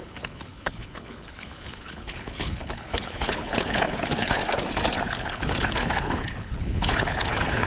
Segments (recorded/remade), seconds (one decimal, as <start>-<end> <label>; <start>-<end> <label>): 0.0-4.4 remade; 4.4-5.1 recorded; 5.1-7.7 remade